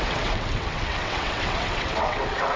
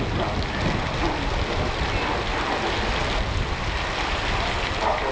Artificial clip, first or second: first